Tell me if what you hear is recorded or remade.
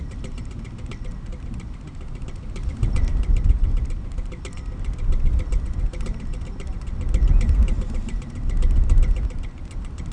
recorded